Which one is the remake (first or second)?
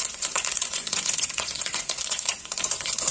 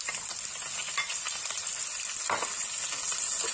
first